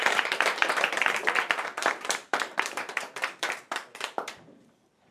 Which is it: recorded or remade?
remade